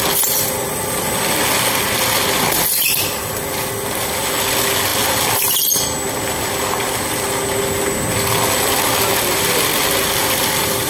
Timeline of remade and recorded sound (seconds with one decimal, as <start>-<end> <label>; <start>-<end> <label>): 0.0-10.9 recorded